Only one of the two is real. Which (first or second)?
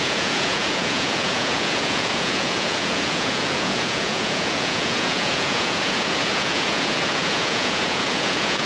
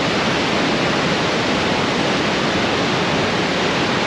second